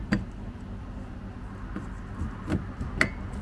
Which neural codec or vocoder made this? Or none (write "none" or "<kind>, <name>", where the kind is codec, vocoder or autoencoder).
none